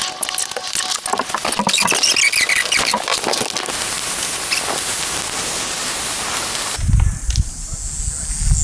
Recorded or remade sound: recorded